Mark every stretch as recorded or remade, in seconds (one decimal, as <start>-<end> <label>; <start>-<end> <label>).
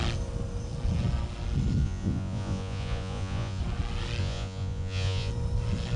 0.0-1.8 recorded; 1.8-3.6 remade; 3.6-4.2 recorded; 4.2-5.3 remade; 5.3-6.0 recorded